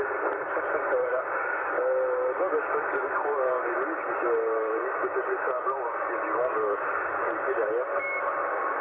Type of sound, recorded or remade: recorded